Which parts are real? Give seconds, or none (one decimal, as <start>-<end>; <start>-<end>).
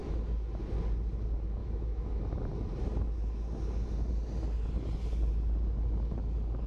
0.0-1.6; 2.2-6.7